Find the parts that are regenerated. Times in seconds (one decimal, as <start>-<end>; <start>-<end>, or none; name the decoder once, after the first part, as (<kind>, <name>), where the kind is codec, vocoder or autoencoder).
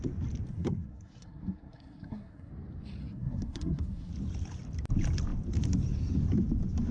0.5-2.5 (codec, SNAC); 3.0-4.1